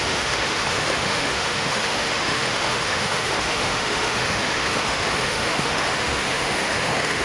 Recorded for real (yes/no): no